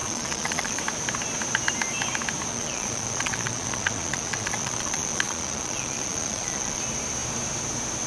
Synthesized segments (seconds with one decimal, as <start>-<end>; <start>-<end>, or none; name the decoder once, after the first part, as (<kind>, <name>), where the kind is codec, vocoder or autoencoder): 0.0-0.8 (vocoder, Vocos); 2.5-6.8